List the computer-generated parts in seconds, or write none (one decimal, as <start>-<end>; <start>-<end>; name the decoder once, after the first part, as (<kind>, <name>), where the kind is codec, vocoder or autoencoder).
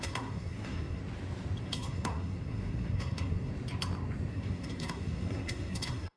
0.0-1.0 (codec, SNAC); 1.6-3.5; 4.3-6.2